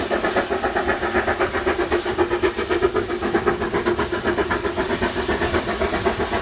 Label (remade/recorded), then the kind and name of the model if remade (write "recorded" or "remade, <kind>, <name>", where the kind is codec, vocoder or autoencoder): recorded